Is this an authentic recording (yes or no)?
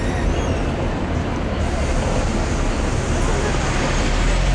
yes